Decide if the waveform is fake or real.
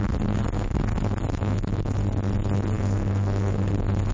fake